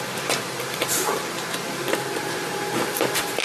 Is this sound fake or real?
fake